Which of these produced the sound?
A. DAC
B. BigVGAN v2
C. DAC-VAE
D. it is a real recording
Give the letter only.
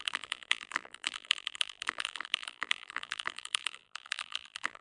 B